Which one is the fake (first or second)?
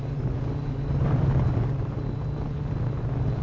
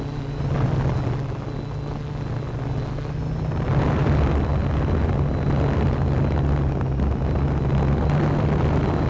first